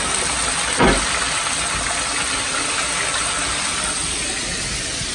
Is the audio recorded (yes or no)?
yes